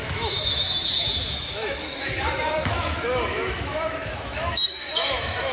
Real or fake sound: fake